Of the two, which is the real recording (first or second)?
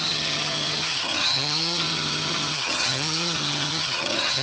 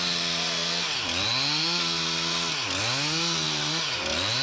second